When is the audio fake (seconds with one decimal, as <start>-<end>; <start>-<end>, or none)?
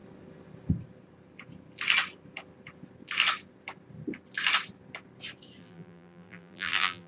5.6-7.1